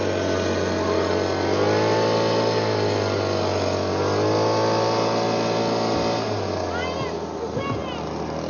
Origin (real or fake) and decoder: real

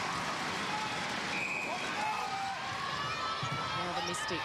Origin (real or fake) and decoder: real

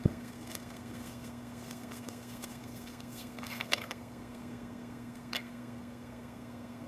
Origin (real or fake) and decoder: fake, codec, SNAC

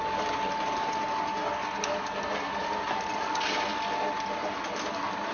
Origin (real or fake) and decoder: real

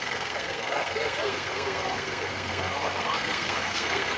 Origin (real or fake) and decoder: fake, codec, SNAC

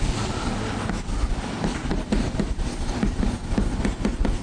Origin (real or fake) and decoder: real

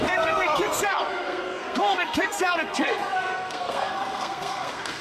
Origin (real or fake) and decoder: fake, codec, SNAC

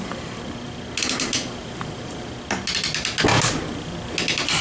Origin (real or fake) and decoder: real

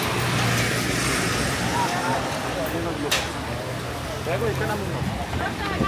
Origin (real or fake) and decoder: real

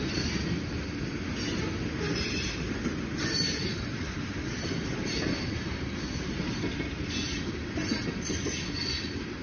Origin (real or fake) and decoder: real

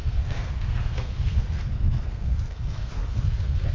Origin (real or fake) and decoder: fake, codec, SNAC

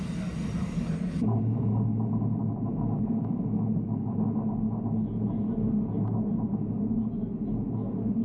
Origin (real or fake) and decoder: real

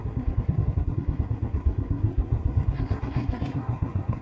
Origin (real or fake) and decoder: fake, codec, SNAC